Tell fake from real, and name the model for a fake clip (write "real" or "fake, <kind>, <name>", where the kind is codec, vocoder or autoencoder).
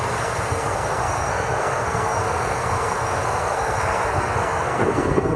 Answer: fake, codec, SNAC